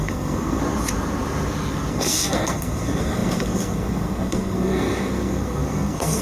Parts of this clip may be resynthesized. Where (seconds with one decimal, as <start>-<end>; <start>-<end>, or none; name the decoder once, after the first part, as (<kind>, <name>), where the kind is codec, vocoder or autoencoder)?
0.0-0.6 (codec, SNAC); 1.9-6.2